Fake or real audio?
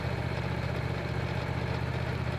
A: fake